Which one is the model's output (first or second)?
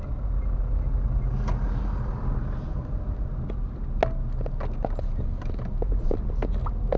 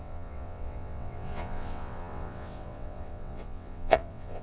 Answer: second